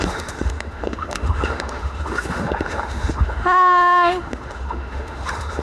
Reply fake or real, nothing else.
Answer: fake